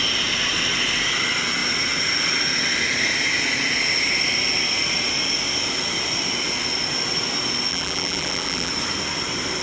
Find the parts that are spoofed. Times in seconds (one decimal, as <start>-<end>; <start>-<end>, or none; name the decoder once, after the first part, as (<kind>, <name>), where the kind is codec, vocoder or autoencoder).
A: 7.7-8.7 (vocoder, BigVGAN v2)